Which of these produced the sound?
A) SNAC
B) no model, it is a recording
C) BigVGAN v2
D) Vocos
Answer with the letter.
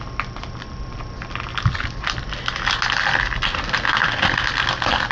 B